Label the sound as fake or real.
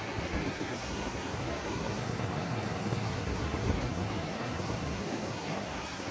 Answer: fake